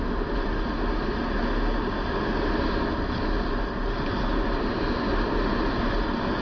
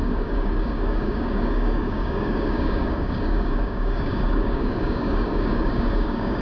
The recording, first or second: first